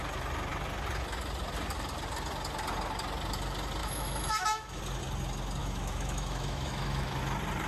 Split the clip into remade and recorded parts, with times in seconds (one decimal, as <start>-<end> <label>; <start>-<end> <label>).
0.0-3.8 recorded; 3.8-4.8 remade; 4.8-5.6 recorded; 5.6-7.2 remade; 7.2-7.7 recorded